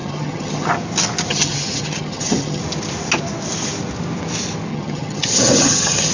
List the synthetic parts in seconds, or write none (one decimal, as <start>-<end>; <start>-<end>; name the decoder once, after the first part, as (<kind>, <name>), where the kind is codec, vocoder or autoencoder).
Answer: 0.0-0.7 (vocoder, HiFi-GAN); 1.3-2.6; 4.7-6.1